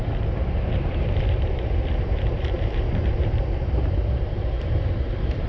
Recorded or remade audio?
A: remade